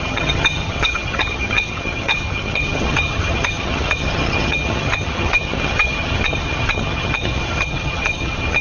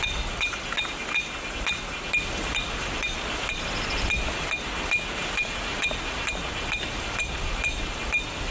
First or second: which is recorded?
second